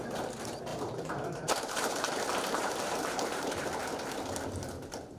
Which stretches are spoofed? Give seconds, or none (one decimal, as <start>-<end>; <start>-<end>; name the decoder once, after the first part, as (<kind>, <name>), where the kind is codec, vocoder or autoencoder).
0.7-3.7 (vocoder, BigVGAN v2)